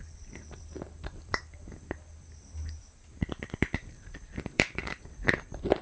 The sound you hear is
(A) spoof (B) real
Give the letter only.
A